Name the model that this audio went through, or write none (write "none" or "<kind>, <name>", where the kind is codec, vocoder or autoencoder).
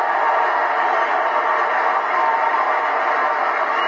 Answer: none